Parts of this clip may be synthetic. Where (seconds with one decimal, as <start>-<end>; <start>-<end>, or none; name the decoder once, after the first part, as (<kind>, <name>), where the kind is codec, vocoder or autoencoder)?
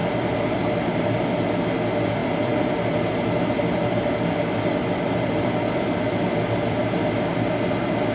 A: 2.2-3.0 (vocoder, BigVGAN v2); 4.7-6.8